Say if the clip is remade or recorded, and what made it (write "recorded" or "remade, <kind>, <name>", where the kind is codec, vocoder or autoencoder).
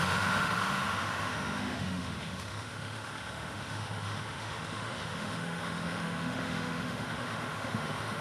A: remade, autoencoder, DAC-VAE